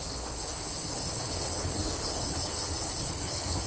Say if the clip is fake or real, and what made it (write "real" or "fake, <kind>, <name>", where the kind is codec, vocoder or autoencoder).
fake, codec, HILCodec